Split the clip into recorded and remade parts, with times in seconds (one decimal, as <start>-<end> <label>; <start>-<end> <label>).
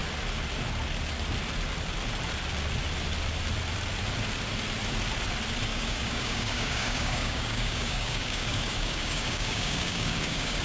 0.0-5.7 recorded; 5.7-10.6 remade